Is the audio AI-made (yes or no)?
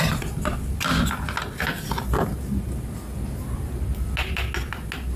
no